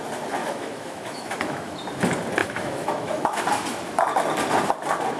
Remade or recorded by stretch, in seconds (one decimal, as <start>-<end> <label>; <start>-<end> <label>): 0.0-0.4 recorded; 0.4-1.8 remade; 1.8-2.4 recorded; 2.4-3.4 remade; 3.4-5.2 recorded

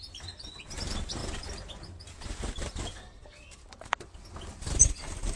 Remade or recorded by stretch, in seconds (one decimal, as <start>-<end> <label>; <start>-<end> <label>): 0.0-4.8 recorded; 4.8-5.4 remade

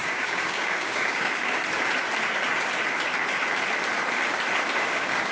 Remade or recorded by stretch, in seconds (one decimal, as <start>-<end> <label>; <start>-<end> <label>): 0.0-1.6 remade; 1.6-4.8 recorded; 4.8-5.3 remade

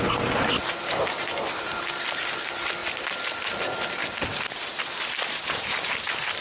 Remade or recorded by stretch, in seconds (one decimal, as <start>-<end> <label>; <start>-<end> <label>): 0.0-0.6 recorded; 0.6-1.8 remade; 1.8-2.8 recorded; 2.8-3.6 remade; 3.6-4.0 recorded; 4.0-6.4 remade